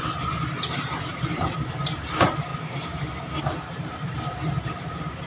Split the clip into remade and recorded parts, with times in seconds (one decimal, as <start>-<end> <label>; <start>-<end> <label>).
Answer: 0.0-2.5 remade; 2.5-3.4 recorded; 3.4-5.3 remade